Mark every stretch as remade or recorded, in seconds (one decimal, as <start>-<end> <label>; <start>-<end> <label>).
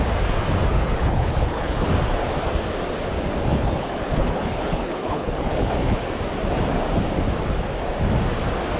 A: 0.0-0.7 recorded; 0.7-1.9 remade; 1.9-3.5 recorded; 3.5-6.0 remade; 6.0-8.8 recorded